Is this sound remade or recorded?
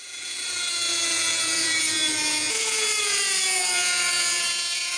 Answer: remade